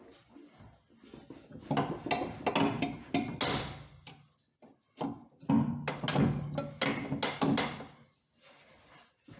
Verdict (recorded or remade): recorded